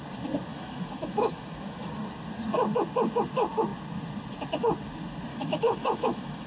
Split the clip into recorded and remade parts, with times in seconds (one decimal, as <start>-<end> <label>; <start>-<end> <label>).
0.0-0.5 recorded; 0.5-1.9 remade; 1.9-5.3 recorded; 5.3-6.5 remade